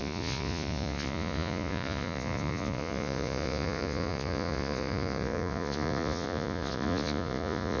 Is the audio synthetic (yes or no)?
yes